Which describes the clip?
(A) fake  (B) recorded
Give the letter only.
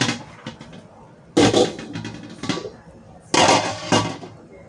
B